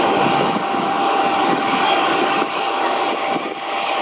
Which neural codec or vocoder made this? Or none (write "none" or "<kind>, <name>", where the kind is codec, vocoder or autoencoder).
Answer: codec, DAC